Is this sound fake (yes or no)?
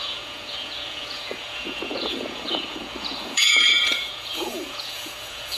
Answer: yes